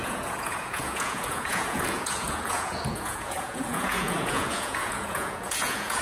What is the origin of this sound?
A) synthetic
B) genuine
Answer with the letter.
A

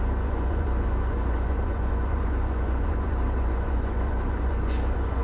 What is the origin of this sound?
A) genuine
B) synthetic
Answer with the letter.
B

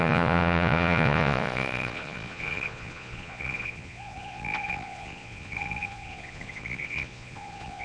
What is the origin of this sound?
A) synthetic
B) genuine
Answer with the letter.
A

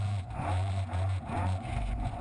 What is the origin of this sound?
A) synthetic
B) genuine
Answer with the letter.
A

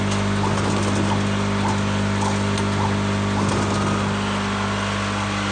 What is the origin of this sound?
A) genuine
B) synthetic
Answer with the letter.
A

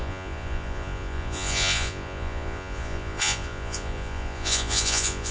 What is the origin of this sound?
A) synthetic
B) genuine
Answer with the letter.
A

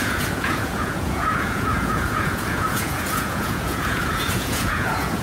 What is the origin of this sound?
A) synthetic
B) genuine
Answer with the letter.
A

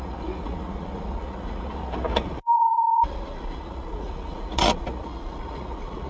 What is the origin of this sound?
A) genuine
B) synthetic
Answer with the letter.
B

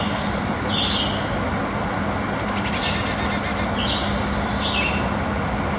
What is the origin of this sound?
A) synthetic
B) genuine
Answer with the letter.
B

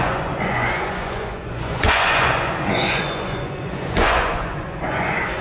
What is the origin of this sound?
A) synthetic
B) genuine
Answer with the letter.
A